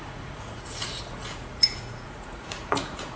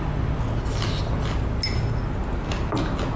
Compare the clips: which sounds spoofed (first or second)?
first